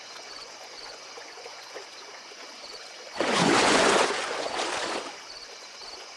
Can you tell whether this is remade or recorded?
remade